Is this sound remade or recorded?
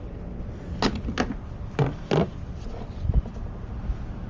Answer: recorded